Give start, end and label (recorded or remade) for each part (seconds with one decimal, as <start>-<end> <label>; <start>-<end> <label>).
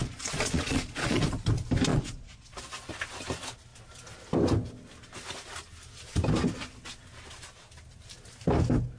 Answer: 0.0-1.3 remade; 1.3-1.9 recorded; 1.9-2.9 remade; 2.9-9.0 recorded